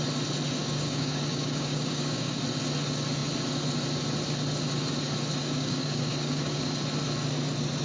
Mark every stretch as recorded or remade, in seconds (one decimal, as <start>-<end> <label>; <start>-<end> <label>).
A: 0.0-0.6 recorded; 0.6-2.4 remade; 2.4-5.4 recorded; 5.4-6.7 remade; 6.7-7.8 recorded